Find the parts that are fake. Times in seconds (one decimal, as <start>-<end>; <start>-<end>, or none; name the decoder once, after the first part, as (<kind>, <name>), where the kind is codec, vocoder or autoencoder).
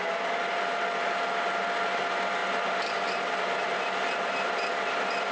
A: none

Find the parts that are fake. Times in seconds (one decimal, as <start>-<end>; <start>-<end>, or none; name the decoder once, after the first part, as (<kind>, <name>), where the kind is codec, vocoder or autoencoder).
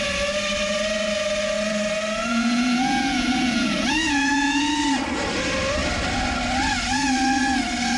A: 2.2-4.6 (vocoder, Vocos)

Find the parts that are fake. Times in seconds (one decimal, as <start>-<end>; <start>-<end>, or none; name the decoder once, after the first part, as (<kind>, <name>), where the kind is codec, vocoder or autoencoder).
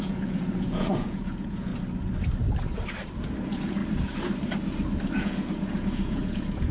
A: 0.0-1.7 (vocoder, Vocos); 3.4-3.8; 5.2-6.7